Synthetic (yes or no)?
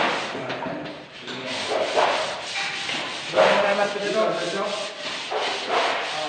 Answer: yes